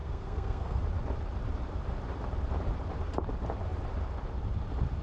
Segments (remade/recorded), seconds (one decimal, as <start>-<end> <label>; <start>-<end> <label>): 0.0-0.8 remade; 0.8-5.0 recorded